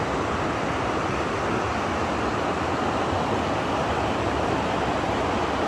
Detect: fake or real real